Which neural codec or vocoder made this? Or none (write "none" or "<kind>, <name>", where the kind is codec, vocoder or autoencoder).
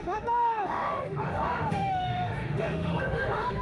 autoencoder, DAC-VAE